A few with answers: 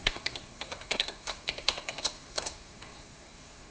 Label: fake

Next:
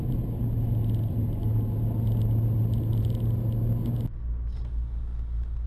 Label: real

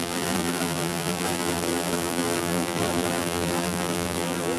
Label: fake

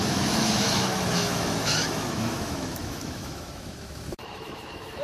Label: fake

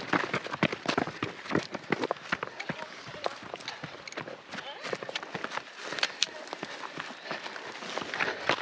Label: real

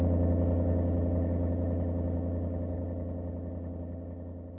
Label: real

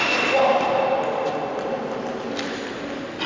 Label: real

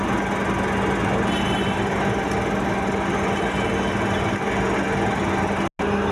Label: real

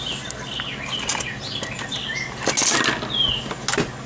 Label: real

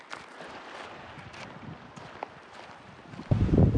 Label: real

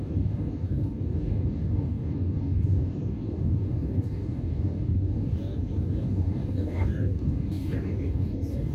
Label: fake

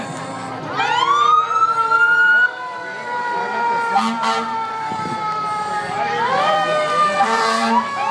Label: fake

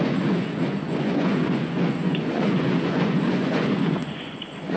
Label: fake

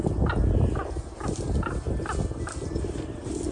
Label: real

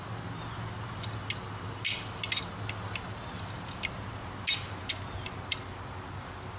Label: real